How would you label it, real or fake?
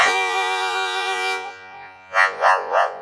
fake